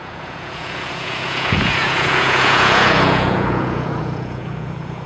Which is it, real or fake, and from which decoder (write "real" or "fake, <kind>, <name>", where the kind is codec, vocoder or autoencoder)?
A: fake, vocoder, Vocos